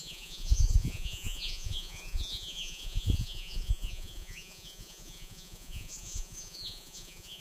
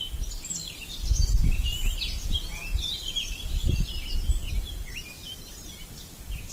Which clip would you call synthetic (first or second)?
first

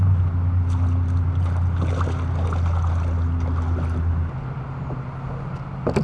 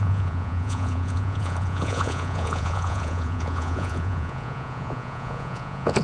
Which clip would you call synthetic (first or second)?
second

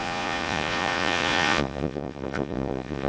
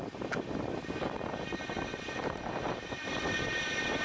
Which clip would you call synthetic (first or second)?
first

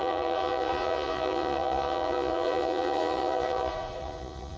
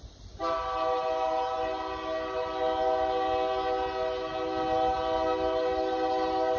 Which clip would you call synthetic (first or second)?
first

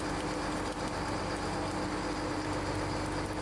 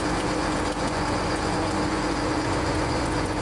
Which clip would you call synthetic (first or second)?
second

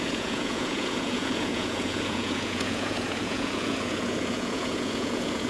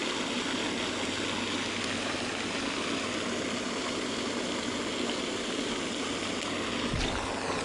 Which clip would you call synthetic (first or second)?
first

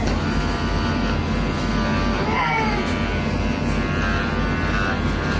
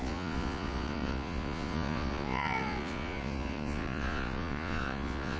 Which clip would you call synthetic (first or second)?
second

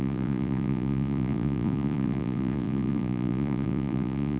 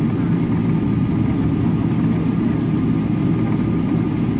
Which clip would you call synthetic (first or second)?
first